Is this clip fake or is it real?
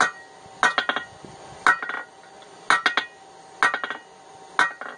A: real